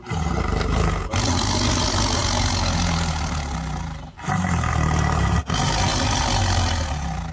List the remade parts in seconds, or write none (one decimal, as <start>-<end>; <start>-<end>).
none